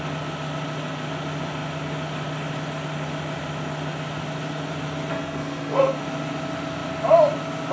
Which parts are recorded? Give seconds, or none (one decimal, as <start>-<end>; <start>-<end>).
0.0-5.1; 6.0-7.7